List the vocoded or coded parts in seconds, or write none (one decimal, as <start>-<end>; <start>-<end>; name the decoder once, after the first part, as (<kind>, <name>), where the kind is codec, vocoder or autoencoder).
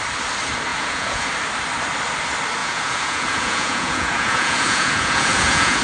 0.7-1.3 (vocoder, Vocos); 2.6-5.8